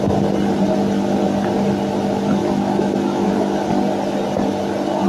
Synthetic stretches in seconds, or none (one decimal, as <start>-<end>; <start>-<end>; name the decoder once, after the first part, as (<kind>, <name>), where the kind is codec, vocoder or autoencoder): 2.4-3.7 (autoencoder, DAC-VAE)